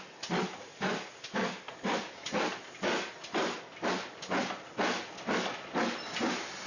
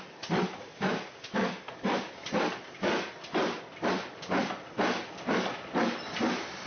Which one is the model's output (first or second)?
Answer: second